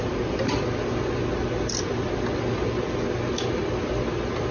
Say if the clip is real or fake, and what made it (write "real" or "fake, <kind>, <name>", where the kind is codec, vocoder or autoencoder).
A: real